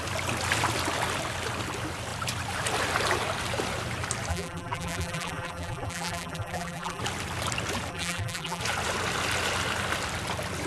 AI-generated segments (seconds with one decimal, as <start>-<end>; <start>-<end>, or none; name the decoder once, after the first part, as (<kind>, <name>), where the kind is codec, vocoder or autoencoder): 4.3-7.0 (vocoder, BigVGAN v2); 7.9-8.6